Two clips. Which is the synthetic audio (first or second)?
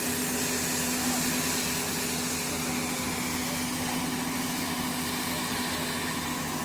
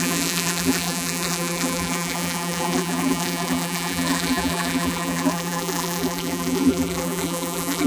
second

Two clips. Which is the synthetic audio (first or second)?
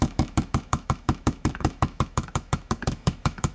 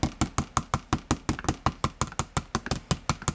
first